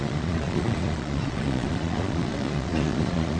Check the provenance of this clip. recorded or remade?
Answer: remade